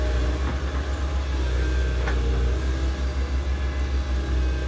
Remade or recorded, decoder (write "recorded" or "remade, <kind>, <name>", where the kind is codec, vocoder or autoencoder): recorded